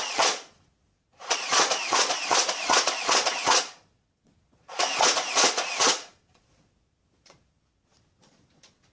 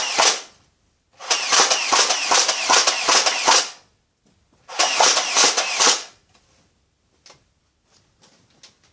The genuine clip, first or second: second